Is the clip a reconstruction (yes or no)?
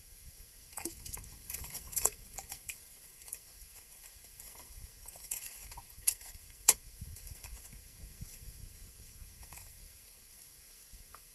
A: yes